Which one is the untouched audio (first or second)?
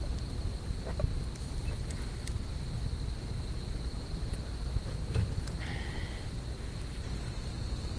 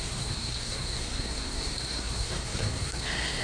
first